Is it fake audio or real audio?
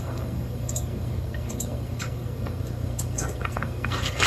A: fake